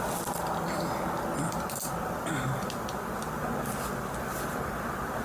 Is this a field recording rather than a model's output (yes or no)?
yes